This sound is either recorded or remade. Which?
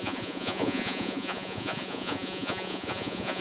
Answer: remade